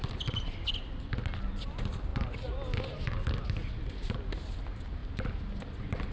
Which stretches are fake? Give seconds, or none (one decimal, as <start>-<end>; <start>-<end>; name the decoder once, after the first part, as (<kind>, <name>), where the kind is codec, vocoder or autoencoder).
none